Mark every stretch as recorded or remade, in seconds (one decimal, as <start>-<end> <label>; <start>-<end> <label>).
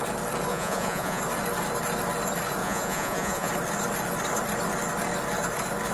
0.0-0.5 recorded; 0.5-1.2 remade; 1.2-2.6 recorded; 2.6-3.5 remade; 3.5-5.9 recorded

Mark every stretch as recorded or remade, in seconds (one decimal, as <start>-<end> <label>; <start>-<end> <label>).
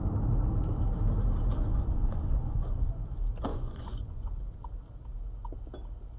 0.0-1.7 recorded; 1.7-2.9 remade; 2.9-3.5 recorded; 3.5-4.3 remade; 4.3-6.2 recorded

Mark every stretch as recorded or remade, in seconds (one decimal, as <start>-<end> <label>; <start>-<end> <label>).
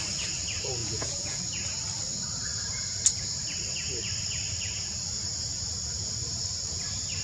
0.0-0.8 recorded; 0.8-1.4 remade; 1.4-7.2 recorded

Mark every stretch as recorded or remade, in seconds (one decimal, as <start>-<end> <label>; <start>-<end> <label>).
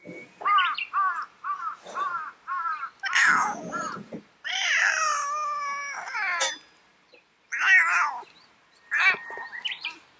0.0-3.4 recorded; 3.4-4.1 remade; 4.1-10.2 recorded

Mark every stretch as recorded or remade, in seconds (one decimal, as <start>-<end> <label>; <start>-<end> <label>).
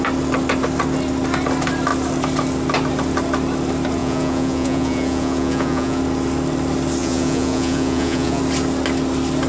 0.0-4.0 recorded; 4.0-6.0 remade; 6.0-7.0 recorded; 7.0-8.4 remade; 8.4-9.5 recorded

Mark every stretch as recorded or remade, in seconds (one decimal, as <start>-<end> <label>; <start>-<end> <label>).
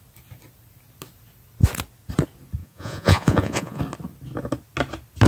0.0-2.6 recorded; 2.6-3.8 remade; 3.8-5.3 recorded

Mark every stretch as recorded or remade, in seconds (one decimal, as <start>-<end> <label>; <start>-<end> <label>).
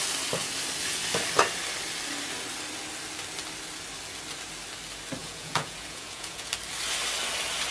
0.0-5.2 recorded; 5.2-6.5 remade; 6.5-7.7 recorded